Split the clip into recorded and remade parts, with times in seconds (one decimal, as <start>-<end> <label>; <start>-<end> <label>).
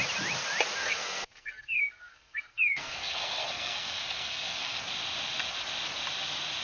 0.0-0.8 recorded; 0.8-4.8 remade; 4.8-6.6 recorded